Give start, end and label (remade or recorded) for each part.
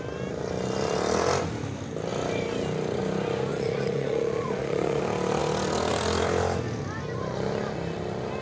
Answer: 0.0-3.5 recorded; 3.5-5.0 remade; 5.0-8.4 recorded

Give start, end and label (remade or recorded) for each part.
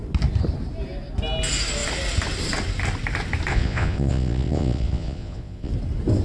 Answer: 0.0-3.5 recorded; 3.5-5.7 remade; 5.7-6.2 recorded